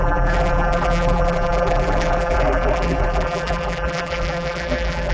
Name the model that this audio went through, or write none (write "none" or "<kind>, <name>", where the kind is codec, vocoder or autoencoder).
vocoder, BigVGAN v2